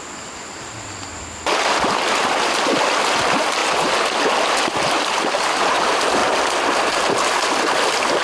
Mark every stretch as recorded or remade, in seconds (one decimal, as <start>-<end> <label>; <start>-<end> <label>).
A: 0.0-8.2 recorded